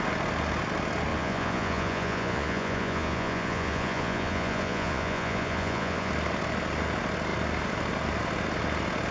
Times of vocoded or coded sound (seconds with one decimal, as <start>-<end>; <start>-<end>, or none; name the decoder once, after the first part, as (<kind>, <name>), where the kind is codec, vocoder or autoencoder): 1.1-6.1 (vocoder, Vocos)